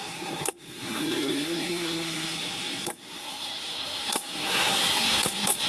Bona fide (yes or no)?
no